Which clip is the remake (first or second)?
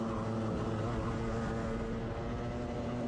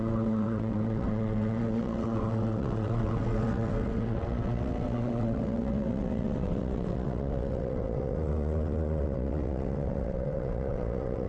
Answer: second